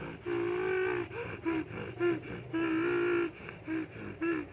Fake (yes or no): no